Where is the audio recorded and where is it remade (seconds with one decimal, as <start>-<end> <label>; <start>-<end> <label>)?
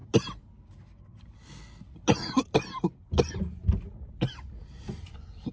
0.0-5.5 recorded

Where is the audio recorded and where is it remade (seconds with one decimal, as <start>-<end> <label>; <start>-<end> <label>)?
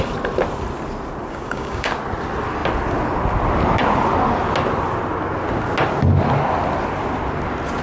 0.0-1.3 recorded; 1.3-1.9 remade; 1.9-7.8 recorded